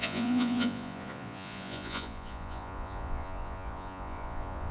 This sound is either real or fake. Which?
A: fake